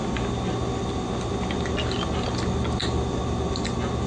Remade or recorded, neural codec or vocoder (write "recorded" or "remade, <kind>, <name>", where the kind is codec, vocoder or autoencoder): recorded